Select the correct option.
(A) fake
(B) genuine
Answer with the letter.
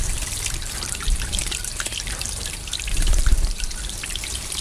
A